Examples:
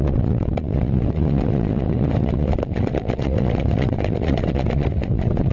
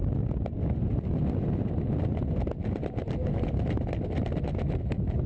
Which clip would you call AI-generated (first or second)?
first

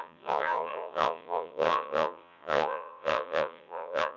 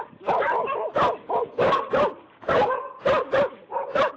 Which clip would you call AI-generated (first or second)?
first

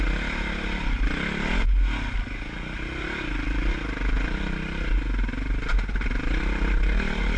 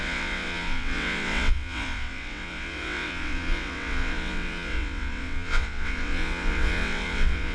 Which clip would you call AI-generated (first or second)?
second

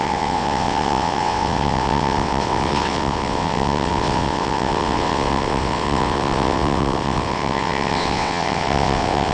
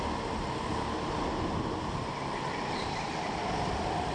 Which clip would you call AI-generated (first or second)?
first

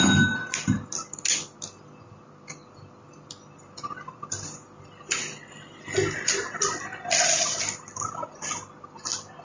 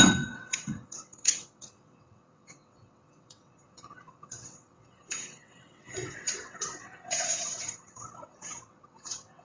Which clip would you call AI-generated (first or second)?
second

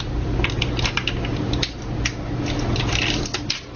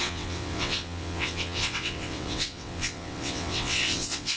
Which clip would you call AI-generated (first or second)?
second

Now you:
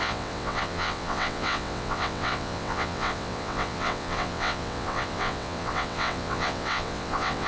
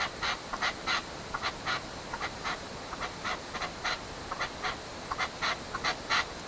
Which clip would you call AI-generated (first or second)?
first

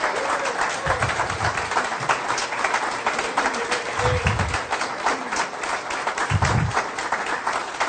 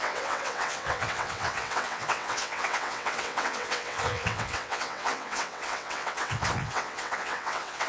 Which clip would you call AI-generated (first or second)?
second